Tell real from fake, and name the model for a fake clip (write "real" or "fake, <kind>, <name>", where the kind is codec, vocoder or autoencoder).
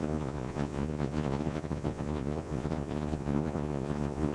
fake, vocoder, Vocos